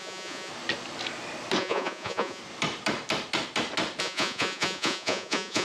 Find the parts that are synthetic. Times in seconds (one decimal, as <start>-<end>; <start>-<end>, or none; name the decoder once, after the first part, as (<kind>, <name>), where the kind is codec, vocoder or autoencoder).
0.0-0.5 (vocoder, Vocos); 1.6-2.4; 4.0-5.6